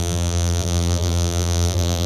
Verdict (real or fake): fake